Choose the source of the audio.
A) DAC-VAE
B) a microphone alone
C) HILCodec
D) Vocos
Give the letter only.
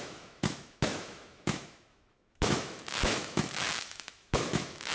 A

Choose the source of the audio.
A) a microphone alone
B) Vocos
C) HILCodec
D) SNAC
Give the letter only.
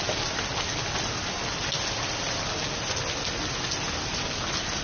A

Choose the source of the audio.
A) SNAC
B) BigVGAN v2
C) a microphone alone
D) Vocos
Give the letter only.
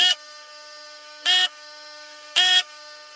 A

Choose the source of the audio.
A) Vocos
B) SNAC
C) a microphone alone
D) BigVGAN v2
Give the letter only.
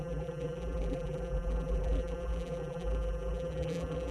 D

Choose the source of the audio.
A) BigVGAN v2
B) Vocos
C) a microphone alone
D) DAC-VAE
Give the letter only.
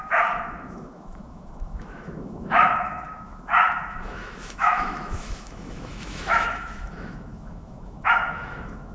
D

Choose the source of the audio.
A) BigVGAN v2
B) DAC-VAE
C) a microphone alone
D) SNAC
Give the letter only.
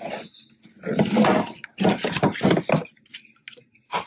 C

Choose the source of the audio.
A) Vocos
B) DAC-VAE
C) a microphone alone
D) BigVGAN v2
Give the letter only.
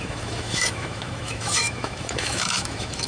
B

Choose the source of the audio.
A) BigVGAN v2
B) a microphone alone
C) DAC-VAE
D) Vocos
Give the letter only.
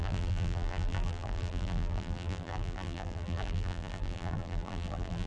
A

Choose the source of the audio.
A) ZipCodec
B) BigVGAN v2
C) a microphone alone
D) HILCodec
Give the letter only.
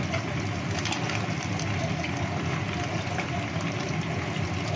C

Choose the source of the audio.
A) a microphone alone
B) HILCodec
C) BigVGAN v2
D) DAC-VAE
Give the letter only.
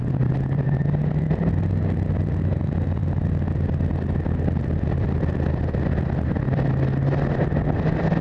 A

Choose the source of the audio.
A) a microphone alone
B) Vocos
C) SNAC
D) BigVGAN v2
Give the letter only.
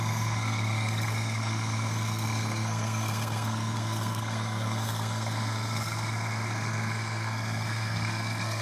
C